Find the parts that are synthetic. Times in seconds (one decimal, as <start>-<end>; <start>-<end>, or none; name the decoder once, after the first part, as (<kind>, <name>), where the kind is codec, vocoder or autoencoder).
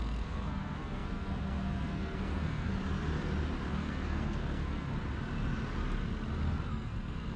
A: 0.0-2.7 (codec, SNAC); 3.7-4.9; 6.7-7.4